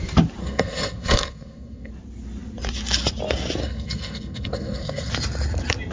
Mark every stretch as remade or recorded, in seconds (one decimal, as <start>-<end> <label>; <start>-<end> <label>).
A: 0.0-0.4 recorded; 0.4-1.9 remade; 1.9-3.6 recorded; 3.6-5.1 remade; 5.1-5.9 recorded